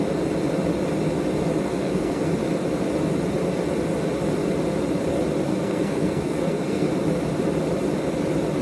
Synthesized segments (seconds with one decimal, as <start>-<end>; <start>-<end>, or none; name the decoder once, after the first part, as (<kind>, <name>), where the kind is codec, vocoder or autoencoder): 1.7-2.3 (codec, SNAC); 5.5-6.9